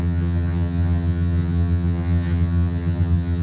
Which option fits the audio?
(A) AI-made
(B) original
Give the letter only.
A